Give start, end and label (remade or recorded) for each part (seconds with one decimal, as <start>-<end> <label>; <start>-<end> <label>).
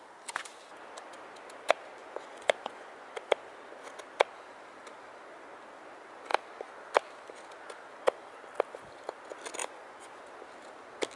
0.0-2.0 recorded; 2.0-3.1 remade; 3.1-9.6 recorded; 9.6-10.2 remade; 10.2-11.2 recorded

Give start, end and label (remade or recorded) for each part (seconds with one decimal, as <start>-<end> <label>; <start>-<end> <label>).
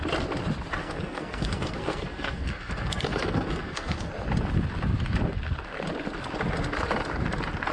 0.0-0.8 recorded; 0.8-4.1 remade; 4.1-7.7 recorded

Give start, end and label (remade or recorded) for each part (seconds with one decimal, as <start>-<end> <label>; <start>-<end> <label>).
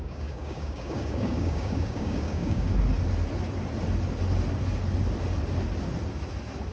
0.0-2.7 remade; 2.7-6.7 recorded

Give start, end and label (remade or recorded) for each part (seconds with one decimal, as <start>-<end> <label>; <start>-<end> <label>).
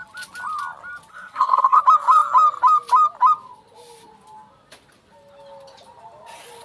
0.0-1.1 recorded; 1.1-1.8 remade; 1.8-6.6 recorded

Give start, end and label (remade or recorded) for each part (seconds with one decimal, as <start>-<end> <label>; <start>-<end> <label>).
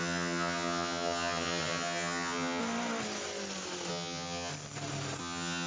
0.0-2.6 remade; 2.6-3.9 recorded; 3.9-4.5 remade; 4.5-5.2 recorded; 5.2-5.7 remade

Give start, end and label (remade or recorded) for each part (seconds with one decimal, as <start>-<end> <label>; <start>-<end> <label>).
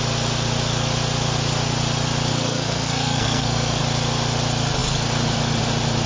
0.0-2.3 recorded; 2.3-3.8 remade; 3.8-6.1 recorded